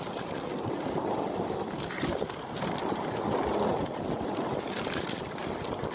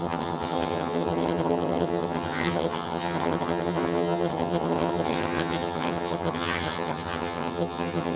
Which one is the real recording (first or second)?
first